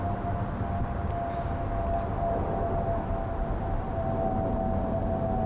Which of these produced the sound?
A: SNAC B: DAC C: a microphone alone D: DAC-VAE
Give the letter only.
C